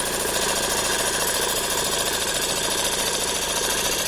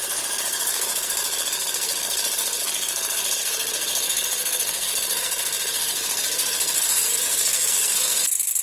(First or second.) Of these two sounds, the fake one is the second